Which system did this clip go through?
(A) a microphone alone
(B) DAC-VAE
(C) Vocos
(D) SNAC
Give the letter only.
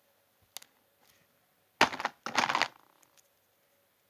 A